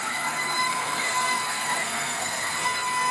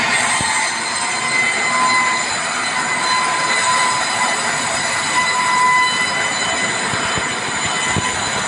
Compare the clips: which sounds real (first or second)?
second